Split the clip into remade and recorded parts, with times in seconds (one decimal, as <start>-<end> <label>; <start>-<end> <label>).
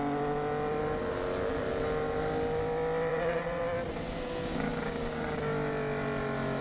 0.0-3.1 recorded; 3.1-3.6 remade; 3.6-6.6 recorded